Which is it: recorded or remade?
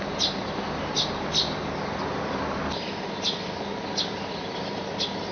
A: recorded